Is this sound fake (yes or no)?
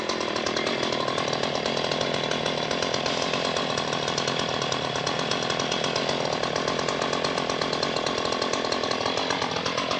yes